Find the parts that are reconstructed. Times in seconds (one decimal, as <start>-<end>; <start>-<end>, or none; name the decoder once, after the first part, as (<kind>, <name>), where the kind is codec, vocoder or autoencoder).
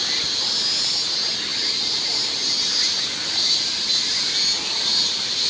1.5-4.2 (vocoder, BigVGAN v2); 4.9-5.5